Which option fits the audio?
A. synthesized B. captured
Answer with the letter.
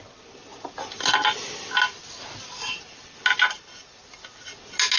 B